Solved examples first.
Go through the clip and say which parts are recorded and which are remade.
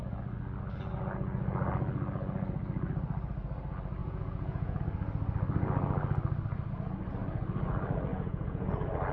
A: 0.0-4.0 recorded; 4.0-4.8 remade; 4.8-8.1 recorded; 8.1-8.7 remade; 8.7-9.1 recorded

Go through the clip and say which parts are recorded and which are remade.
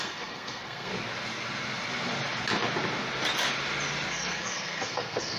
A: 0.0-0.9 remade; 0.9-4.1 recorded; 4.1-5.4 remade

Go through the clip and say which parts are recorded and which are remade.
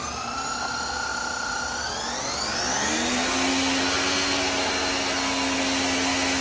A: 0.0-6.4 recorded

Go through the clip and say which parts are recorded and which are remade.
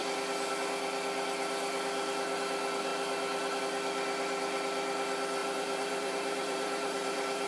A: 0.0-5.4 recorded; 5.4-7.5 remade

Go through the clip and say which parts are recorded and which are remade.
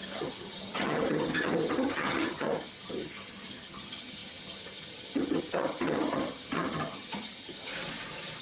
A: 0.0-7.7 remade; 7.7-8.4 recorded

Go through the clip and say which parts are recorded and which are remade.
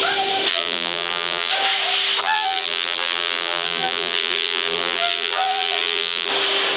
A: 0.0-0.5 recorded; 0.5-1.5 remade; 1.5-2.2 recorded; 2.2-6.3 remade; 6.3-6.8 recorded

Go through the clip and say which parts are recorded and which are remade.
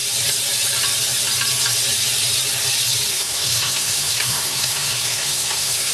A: 0.0-3.1 recorded; 3.1-5.9 remade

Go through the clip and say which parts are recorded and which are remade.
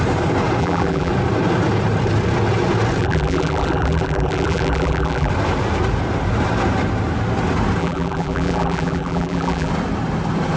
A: 0.0-0.6 recorded; 0.6-1.1 remade; 1.1-3.0 recorded; 3.0-5.3 remade; 5.3-7.8 recorded; 7.8-9.7 remade; 9.7-10.6 recorded